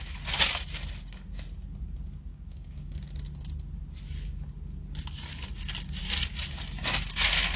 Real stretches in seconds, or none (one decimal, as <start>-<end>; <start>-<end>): 0.0-2.3; 3.1-7.6